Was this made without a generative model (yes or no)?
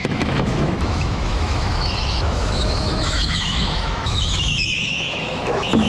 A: no